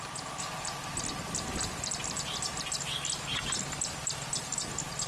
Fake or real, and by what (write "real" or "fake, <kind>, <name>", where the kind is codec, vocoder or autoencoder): real